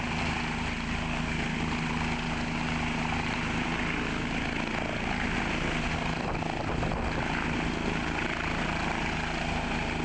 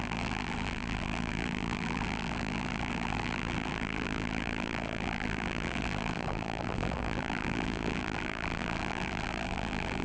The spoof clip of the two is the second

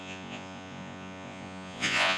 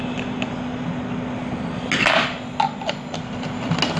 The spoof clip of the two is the first